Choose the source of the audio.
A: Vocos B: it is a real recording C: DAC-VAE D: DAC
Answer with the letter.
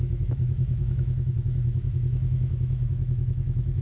C